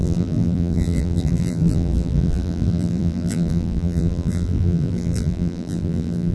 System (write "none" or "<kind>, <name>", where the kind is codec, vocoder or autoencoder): vocoder, BigVGAN v2